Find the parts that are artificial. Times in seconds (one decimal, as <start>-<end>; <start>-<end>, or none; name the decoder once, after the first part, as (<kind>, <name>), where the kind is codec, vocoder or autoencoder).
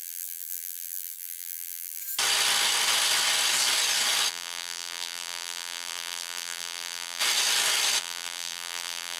0.0-2.0 (vocoder, BigVGAN v2); 4.3-7.2; 8.0-9.2